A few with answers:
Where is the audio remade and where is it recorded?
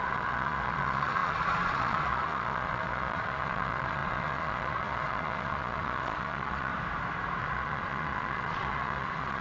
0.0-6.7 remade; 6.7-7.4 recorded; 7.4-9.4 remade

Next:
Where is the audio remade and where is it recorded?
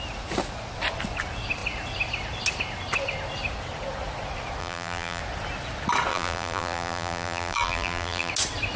0.0-4.6 recorded; 4.6-5.2 remade; 5.2-6.1 recorded; 6.1-8.3 remade; 8.3-8.8 recorded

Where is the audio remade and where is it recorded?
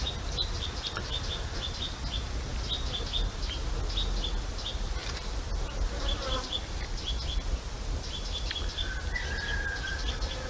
0.0-10.5 recorded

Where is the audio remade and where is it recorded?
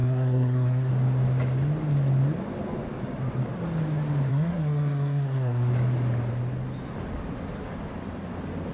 0.0-0.9 remade; 0.9-4.3 recorded; 4.3-5.7 remade; 5.7-8.7 recorded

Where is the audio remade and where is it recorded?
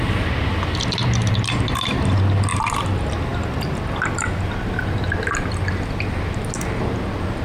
0.0-1.0 recorded; 1.0-1.5 remade; 1.5-2.5 recorded; 2.5-6.4 remade; 6.4-7.4 recorded